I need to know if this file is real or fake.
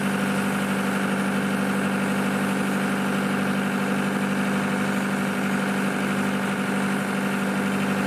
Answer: real